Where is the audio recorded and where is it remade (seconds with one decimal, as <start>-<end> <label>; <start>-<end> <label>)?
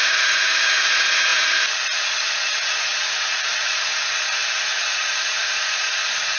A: 0.0-6.4 remade